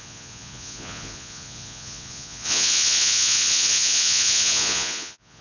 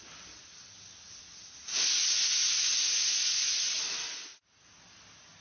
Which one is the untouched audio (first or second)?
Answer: second